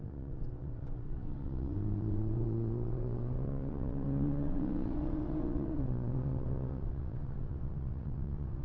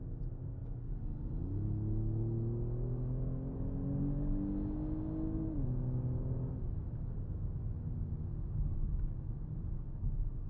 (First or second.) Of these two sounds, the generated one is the first